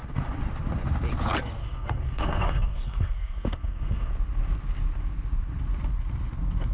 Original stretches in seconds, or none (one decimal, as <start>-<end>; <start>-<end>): 0.0-1.6; 4.1-6.7